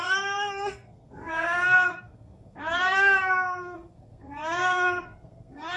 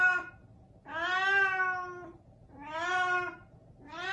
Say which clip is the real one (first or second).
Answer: second